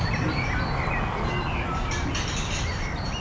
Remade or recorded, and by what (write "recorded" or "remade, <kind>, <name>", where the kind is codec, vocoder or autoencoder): recorded